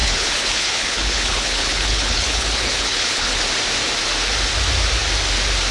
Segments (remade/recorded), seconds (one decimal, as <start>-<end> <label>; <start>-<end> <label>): 0.0-3.4 remade; 3.4-5.7 recorded